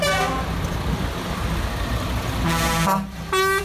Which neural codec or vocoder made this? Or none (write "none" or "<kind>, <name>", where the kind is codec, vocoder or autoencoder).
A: none